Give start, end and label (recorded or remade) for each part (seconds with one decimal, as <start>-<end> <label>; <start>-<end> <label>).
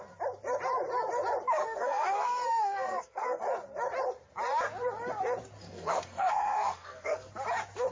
0.0-1.6 recorded; 1.6-3.4 remade; 3.4-5.6 recorded; 5.6-7.3 remade; 7.3-7.9 recorded